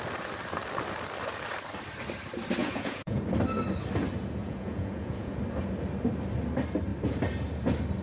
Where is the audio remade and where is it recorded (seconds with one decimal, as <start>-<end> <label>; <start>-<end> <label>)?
0.0-2.6 recorded; 2.6-3.2 remade; 3.2-4.4 recorded; 4.4-5.4 remade; 5.4-8.0 recorded